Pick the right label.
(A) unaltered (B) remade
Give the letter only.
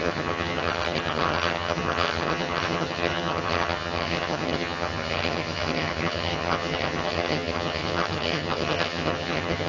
B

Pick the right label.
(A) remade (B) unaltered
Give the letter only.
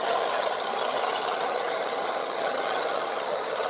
A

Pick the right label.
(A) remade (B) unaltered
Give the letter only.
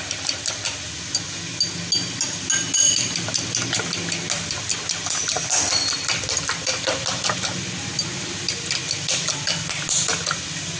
B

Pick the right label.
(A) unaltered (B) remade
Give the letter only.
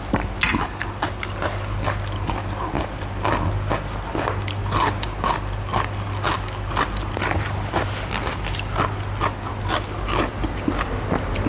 A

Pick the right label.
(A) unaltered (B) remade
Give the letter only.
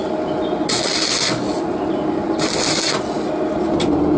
A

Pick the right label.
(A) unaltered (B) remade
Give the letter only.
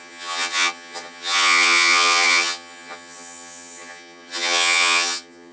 B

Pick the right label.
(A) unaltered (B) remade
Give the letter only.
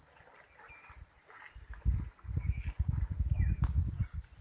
A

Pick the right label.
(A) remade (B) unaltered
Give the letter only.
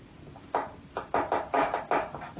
B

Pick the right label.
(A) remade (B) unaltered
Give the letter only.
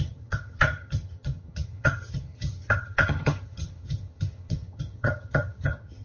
A